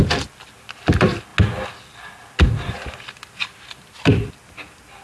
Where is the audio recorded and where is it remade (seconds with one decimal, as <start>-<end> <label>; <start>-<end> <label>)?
0.0-5.0 recorded